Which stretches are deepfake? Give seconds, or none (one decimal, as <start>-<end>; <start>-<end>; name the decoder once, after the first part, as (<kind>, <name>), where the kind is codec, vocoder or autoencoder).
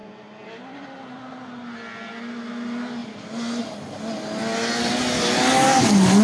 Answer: none